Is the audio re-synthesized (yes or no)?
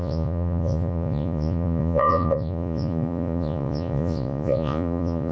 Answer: yes